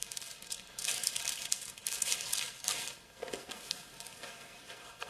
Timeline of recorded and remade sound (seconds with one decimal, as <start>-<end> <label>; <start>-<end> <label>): 0.0-5.1 remade